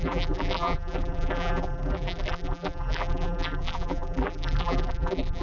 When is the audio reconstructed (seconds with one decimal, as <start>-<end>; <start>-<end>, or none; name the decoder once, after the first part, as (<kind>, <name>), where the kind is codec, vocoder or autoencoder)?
0.0-5.4 (vocoder, BigVGAN v2)